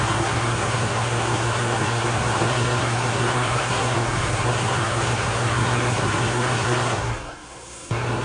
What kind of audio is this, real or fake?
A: fake